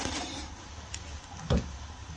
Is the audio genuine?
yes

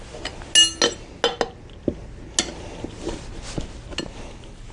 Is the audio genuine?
yes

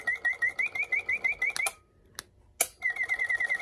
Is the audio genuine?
yes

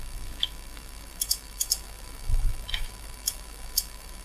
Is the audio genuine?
no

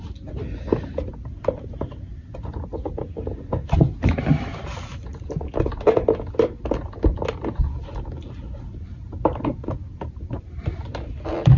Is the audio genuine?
yes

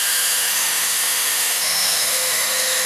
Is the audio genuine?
no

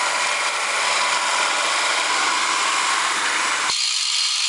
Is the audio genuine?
yes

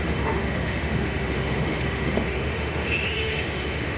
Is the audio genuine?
no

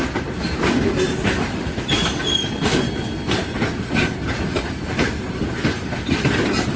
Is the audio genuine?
yes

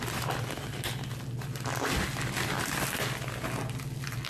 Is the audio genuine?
yes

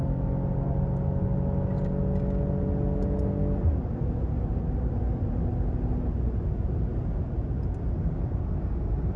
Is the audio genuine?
yes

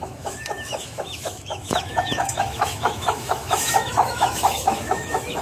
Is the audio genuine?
no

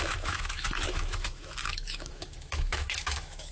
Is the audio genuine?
no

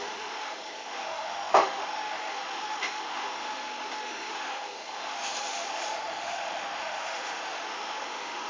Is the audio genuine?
no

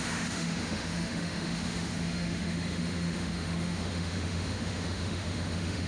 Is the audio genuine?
no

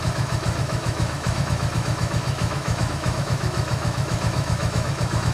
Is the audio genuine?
no